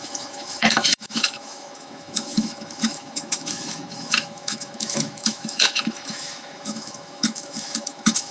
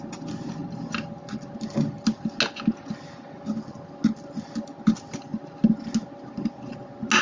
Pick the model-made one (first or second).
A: first